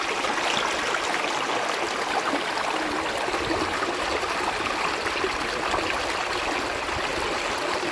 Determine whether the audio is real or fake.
real